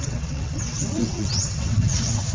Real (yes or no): no